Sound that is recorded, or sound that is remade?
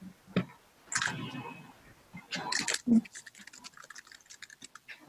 recorded